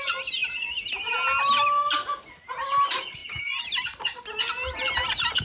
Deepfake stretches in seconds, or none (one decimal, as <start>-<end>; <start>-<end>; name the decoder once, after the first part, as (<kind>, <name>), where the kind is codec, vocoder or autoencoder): 3.2-4.2 (vocoder, BigVGAN v2)